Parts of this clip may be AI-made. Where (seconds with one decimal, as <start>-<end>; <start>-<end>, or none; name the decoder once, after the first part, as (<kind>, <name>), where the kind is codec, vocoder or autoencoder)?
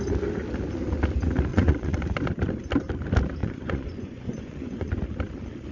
1.5-2.0 (vocoder, Vocos); 3.4-4.9